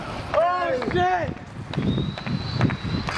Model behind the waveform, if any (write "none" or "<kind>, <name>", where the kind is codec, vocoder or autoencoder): none